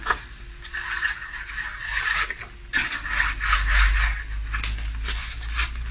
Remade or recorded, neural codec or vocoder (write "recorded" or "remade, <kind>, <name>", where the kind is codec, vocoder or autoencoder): recorded